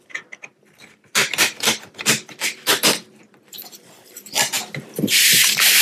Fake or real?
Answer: fake